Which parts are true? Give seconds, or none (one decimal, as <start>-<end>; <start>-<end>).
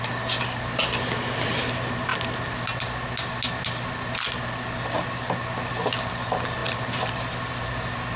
0.0-8.2